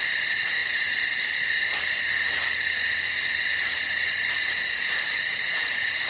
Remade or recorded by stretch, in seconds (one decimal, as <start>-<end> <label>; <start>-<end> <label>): 0.0-6.1 recorded

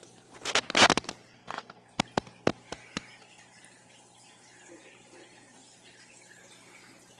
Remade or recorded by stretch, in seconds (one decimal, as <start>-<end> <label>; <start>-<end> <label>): 0.0-1.4 recorded; 1.4-2.0 remade; 2.0-7.2 recorded